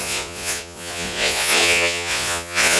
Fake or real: fake